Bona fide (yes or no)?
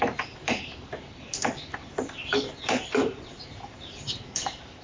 no